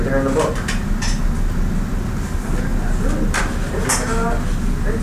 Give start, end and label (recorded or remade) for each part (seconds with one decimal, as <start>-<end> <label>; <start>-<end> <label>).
0.0-5.0 recorded

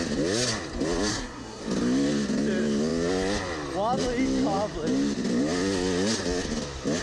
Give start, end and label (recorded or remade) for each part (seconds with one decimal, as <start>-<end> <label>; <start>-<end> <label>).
0.0-1.1 recorded; 1.1-1.6 remade; 1.6-7.0 recorded

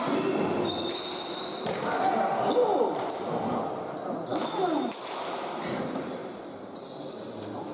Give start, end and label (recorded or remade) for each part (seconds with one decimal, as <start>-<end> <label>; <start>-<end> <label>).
0.0-4.3 recorded; 4.3-5.0 remade; 5.0-7.7 recorded